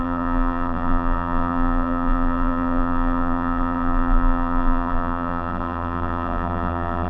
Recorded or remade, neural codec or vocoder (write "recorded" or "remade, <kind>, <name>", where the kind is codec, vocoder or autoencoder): remade, vocoder, BigVGAN v2